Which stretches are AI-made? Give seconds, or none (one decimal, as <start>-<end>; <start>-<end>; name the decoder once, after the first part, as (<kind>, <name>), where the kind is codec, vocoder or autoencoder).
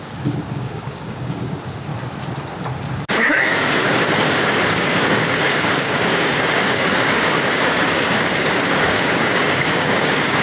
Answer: 0.0-1.9 (codec, DAC); 3.1-10.4